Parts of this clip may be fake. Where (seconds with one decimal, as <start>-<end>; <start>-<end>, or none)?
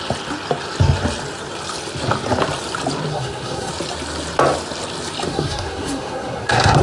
3.1-3.7; 5.3-6.8